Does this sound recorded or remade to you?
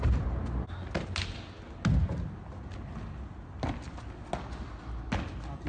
recorded